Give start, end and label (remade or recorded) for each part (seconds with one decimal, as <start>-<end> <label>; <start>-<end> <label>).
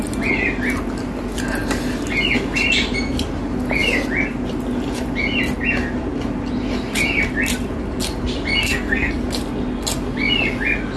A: 0.0-8.6 recorded; 8.6-9.1 remade; 9.1-11.0 recorded